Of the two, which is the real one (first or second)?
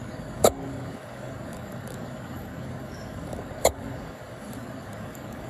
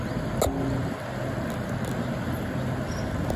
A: second